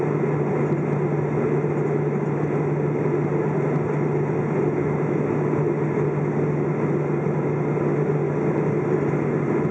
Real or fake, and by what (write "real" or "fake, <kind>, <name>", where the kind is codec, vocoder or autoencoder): real